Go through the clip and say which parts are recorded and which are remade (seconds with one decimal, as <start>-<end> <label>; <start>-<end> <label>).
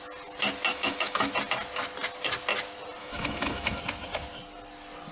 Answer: 0.0-0.7 recorded; 0.7-1.3 remade; 1.3-3.0 recorded; 3.0-3.8 remade; 3.8-5.1 recorded